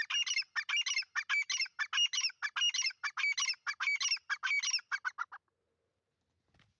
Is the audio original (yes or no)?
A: yes